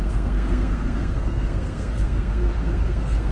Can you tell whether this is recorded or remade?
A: remade